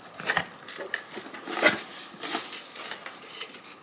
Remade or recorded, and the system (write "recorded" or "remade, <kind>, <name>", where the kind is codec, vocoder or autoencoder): recorded